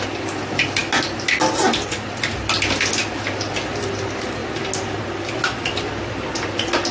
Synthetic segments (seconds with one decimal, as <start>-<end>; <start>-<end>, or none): none